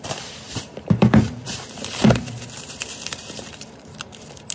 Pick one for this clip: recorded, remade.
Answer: remade